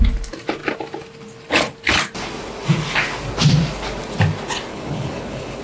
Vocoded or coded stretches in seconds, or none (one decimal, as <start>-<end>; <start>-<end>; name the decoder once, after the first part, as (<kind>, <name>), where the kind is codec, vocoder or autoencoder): 4.7-5.6 (codec, HILCodec)